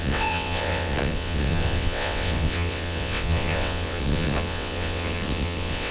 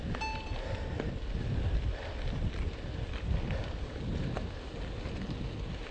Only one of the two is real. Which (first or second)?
second